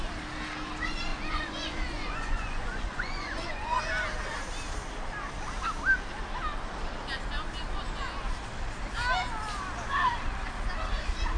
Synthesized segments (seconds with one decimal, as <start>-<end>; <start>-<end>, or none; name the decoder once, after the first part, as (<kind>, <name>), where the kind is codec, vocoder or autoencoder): 1.1-3.8 (vocoder, Vocos)